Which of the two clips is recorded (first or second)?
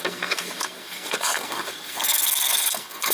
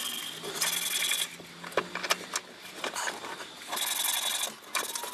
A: second